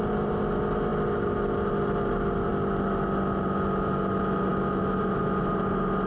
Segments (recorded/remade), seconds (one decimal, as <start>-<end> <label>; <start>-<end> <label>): 0.0-6.1 recorded